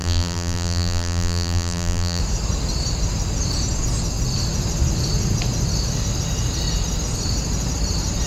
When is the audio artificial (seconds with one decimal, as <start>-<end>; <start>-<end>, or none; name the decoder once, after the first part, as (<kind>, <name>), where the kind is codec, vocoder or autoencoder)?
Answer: 0.0-2.2 (vocoder, BigVGAN v2)